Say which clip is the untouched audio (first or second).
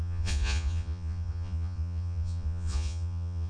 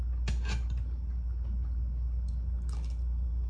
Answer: second